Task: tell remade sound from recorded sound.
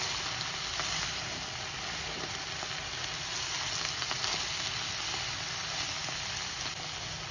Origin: recorded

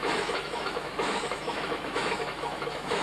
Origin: remade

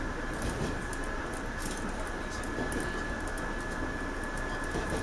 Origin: recorded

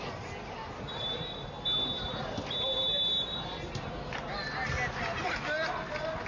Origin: recorded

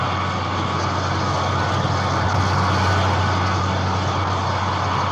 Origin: recorded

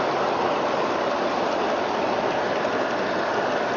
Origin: recorded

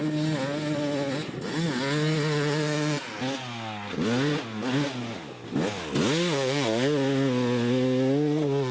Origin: recorded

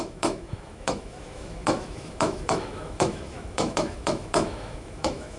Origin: remade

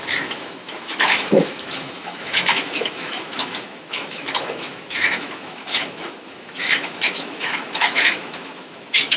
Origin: remade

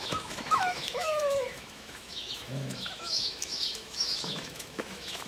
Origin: remade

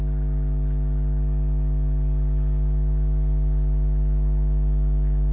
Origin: recorded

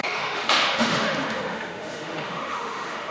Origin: remade